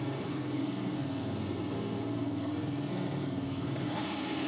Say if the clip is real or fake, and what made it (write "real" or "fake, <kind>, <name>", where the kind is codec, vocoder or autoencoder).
fake, codec, SNAC